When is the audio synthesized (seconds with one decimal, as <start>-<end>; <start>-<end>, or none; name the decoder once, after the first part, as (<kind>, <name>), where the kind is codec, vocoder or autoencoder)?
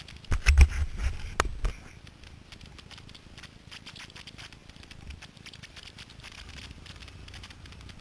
4.6-7.0 (vocoder, BigVGAN v2)